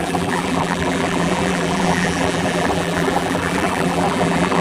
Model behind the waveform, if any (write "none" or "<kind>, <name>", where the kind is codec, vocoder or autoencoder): vocoder, BigVGAN v2